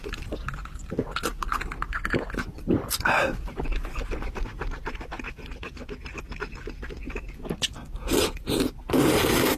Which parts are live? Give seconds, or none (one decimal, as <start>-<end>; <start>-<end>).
0.0-9.6